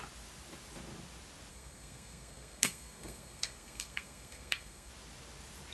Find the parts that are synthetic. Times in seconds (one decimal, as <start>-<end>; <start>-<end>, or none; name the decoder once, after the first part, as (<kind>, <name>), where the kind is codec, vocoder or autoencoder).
1.5-4.9 (codec, SNAC)